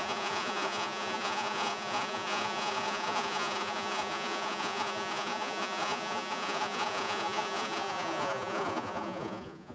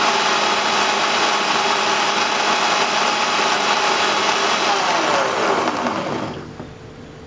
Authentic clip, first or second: second